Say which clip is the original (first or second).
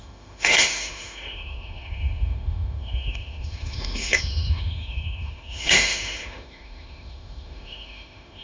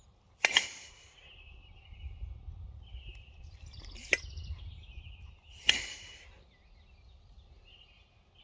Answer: second